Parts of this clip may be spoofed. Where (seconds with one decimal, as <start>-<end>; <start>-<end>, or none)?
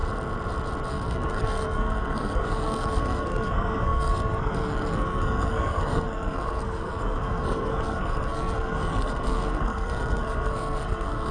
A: 0.9-11.3